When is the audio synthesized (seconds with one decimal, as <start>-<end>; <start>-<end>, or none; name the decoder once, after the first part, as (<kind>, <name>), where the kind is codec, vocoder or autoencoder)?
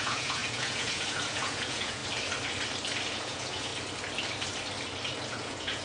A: 0.0-2.0 (vocoder, Vocos); 3.1-3.7; 5.3-5.8